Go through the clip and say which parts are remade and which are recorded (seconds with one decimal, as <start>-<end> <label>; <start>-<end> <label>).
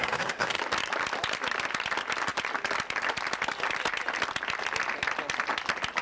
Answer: 0.0-0.6 remade; 0.6-6.0 recorded